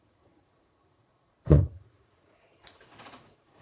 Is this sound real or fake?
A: fake